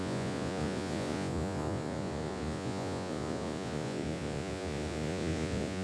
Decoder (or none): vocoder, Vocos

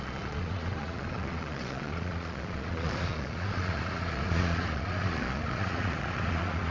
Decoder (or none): vocoder, Vocos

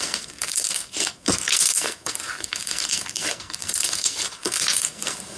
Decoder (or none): codec, SNAC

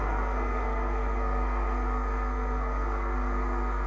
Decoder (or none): codec, SNAC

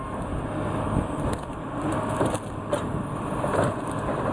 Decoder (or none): none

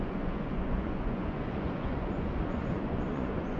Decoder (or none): vocoder, Vocos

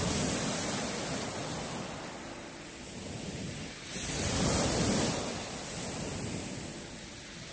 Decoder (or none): none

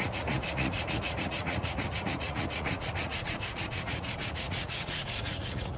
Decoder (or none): vocoder, Vocos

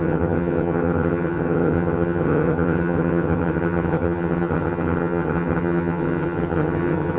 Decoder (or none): vocoder, HiFi-GAN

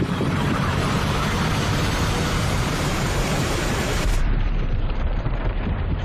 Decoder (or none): vocoder, BigVGAN v2